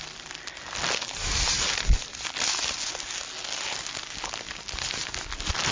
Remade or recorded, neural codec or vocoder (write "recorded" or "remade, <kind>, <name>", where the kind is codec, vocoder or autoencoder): recorded